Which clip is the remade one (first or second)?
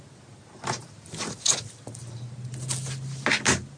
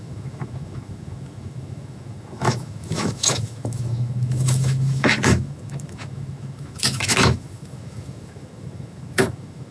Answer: second